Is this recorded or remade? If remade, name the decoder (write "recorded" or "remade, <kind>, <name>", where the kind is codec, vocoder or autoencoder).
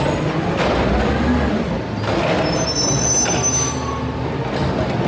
recorded